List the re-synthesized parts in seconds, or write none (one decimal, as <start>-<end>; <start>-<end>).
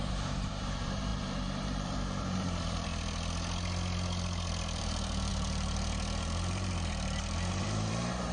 0.0-2.9; 4.8-8.3